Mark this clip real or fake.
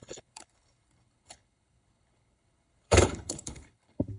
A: fake